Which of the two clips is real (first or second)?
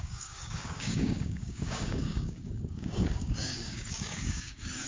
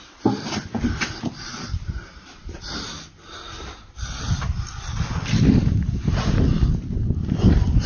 second